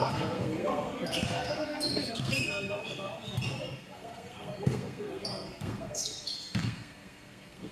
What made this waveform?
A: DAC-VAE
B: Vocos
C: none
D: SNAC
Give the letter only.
D